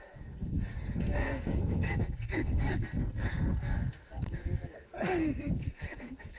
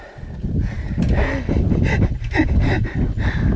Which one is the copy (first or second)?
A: first